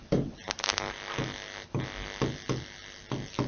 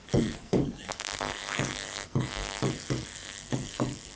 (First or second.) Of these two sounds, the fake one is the second